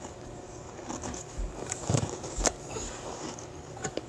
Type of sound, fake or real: fake